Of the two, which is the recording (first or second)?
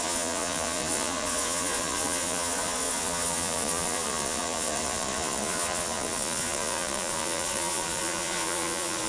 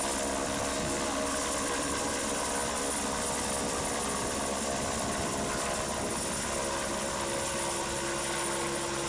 second